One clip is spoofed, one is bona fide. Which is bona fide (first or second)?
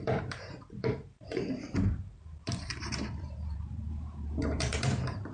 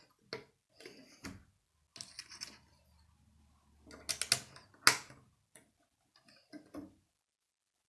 second